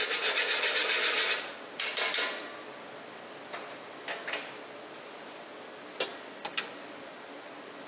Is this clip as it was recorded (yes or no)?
yes